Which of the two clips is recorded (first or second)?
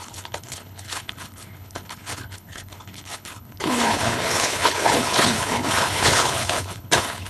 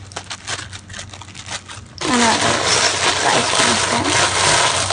second